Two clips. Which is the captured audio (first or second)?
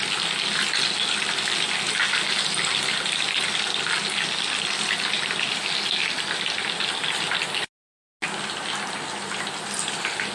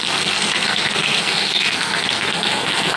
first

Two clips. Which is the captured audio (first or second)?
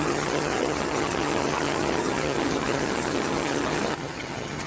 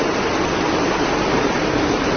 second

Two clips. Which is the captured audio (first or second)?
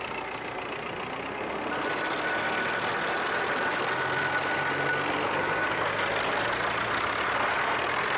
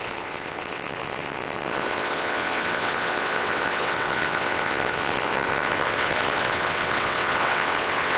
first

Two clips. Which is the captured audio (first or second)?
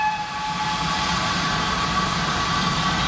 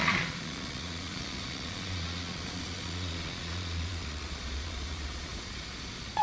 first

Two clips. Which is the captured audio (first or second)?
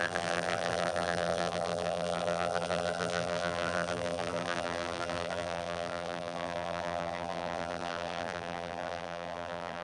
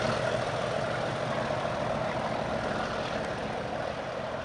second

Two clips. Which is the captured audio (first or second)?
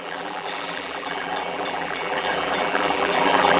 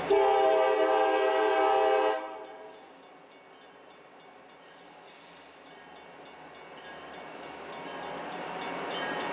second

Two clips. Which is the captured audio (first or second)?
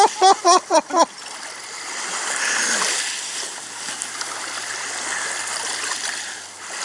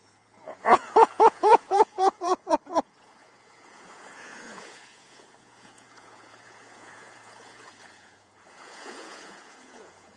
first